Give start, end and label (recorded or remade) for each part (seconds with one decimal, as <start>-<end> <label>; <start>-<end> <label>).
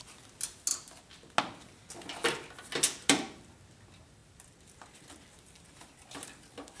0.0-6.8 recorded